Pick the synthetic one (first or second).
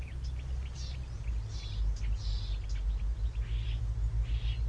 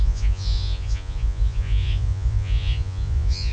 second